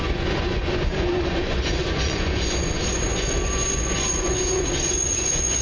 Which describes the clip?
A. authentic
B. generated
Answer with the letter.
B